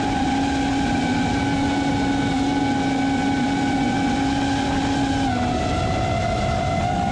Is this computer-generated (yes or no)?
no